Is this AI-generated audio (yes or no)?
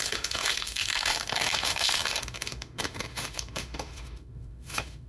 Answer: yes